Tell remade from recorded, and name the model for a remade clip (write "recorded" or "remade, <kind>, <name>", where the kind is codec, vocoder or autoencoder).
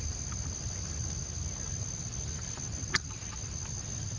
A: recorded